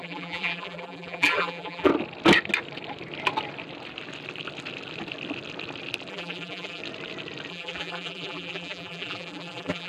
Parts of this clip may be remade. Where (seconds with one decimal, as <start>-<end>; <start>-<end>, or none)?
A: 0.0-1.9; 6.1-6.8; 7.5-9.9